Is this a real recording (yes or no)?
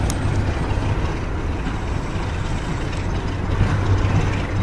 yes